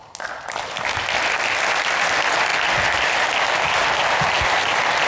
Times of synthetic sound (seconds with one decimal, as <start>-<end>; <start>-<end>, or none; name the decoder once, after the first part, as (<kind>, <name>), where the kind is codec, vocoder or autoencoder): none